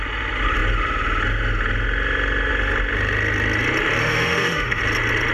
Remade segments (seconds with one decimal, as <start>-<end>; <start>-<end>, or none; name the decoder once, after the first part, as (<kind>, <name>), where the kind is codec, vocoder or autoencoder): 4.0-4.8 (autoencoder, DAC-VAE)